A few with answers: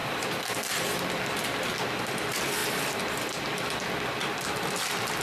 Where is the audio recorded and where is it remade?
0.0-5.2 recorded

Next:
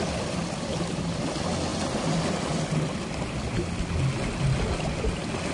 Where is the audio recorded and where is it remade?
0.0-5.5 recorded